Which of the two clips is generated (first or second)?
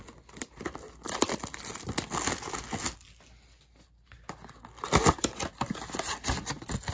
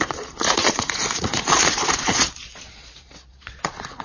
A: second